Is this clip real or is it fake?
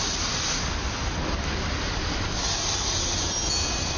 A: real